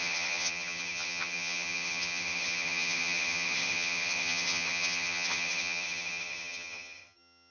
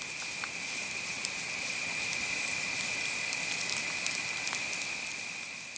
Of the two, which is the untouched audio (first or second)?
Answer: second